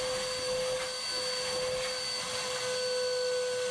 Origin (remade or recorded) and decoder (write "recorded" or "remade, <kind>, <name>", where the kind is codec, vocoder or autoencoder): recorded